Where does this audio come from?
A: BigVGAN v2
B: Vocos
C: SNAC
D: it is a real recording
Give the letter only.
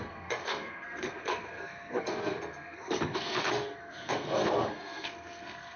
C